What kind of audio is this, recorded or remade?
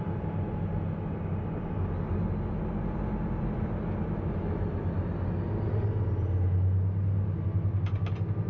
recorded